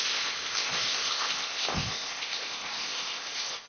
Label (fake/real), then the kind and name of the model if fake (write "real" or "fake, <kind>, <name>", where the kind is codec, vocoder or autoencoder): fake, codec, ZipCodec